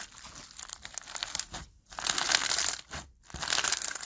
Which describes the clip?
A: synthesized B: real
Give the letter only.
B